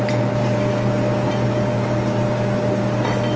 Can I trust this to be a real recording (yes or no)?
yes